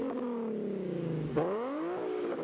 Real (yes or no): no